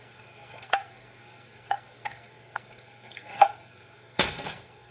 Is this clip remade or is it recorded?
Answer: remade